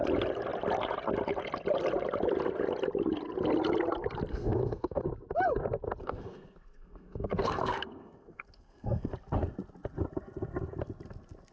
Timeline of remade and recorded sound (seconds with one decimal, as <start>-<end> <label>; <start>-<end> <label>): 0.0-4.3 recorded; 4.3-5.0 remade; 5.0-6.0 recorded; 6.0-9.1 remade; 9.1-11.5 recorded